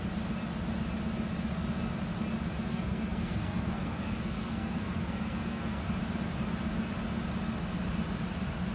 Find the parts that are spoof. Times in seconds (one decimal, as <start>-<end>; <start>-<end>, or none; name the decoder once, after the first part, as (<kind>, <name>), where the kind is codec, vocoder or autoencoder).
2.7-5.8 (codec, SNAC)